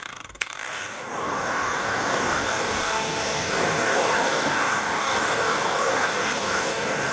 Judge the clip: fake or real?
fake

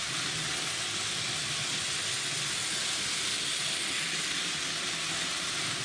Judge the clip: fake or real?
real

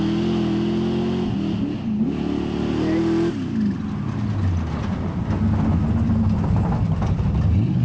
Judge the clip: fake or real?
real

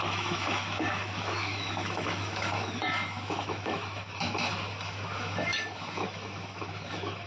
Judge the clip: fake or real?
fake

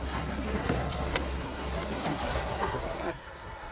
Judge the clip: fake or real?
fake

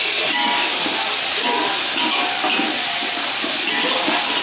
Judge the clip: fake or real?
real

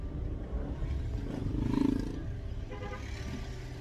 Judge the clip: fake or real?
real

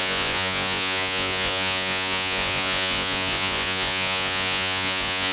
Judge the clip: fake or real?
fake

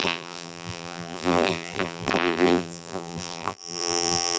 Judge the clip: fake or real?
fake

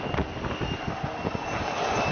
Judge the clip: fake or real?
real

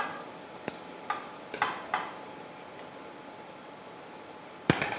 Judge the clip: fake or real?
real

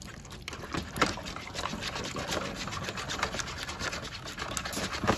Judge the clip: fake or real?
real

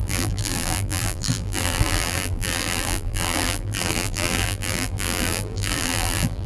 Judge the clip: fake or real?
fake